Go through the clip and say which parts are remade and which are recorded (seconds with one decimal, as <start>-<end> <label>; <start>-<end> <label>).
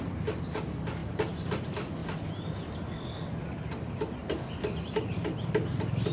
0.0-1.0 remade; 1.0-1.6 recorded; 1.6-2.0 remade; 2.0-3.3 recorded; 3.3-4.2 remade; 4.2-5.0 recorded; 5.0-6.1 remade